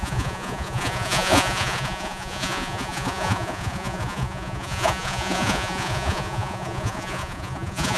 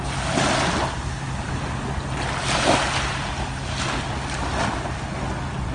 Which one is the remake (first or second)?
first